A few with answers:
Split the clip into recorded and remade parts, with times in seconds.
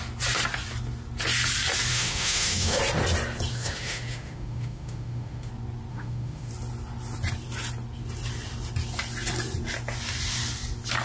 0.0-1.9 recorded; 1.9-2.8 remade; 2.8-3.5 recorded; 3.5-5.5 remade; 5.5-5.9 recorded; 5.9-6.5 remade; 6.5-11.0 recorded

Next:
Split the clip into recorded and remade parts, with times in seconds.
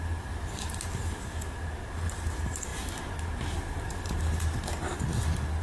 0.0-5.6 recorded